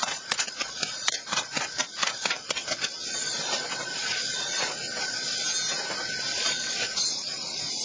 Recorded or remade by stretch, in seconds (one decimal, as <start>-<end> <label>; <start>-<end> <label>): 0.0-5.3 remade; 5.3-6.4 recorded; 6.4-7.8 remade